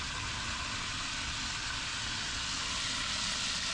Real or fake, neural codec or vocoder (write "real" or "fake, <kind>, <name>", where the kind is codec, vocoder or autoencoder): real